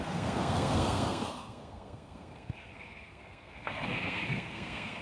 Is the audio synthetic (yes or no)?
yes